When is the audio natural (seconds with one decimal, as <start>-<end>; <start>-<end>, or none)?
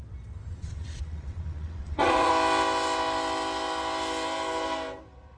0.0-0.5; 2.3-5.4